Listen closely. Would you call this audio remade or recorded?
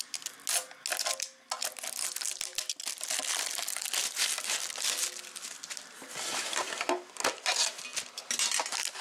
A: recorded